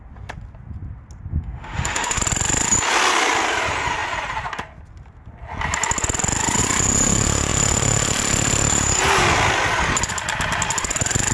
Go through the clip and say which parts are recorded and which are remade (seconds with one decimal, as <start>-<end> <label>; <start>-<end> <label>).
0.0-1.3 recorded; 1.3-2.2 remade; 2.2-11.3 recorded